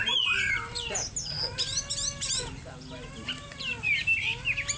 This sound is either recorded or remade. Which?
remade